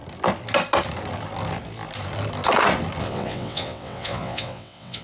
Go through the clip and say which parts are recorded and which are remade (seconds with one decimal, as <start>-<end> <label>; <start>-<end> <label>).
0.0-3.0 recorded; 3.0-5.0 remade